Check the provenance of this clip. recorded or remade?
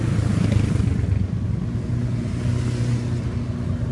recorded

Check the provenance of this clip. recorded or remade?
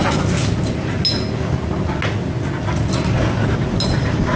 recorded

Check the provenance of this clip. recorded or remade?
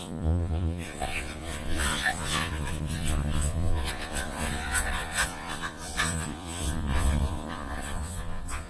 remade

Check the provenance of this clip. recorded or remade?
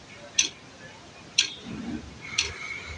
recorded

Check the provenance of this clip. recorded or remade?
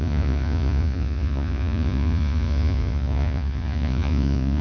remade